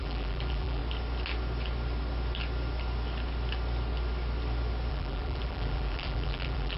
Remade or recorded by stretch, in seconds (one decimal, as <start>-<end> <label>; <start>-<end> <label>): 0.0-0.8 remade; 0.8-4.9 recorded; 4.9-6.8 remade